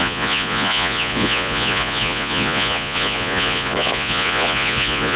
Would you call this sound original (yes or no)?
no